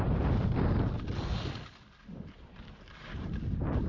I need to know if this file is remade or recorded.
recorded